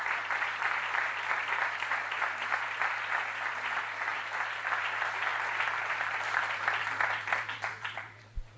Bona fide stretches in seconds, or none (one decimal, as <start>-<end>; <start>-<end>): 0.0-8.6